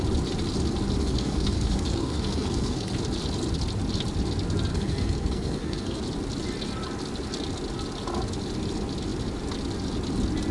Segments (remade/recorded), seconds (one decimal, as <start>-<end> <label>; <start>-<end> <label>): 0.0-1.0 recorded; 1.0-2.9 remade; 2.9-4.7 recorded; 4.7-6.0 remade; 6.0-10.5 recorded